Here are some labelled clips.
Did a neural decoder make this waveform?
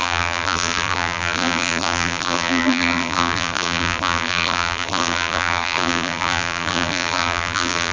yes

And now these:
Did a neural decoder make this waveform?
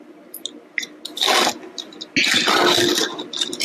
no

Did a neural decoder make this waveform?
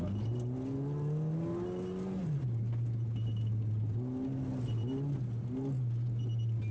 no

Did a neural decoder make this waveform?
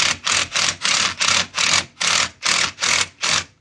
no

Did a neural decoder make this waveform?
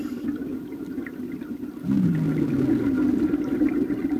no